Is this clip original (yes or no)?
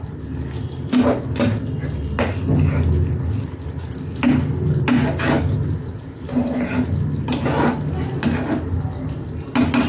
yes